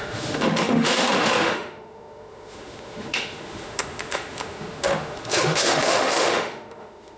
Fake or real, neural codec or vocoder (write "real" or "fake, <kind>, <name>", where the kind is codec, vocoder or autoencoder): fake, autoencoder, DAC-VAE